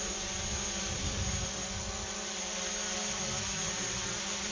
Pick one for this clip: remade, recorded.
recorded